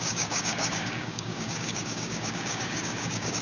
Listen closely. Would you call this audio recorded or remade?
remade